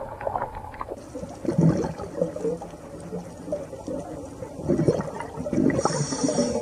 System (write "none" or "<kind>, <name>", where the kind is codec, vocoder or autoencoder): none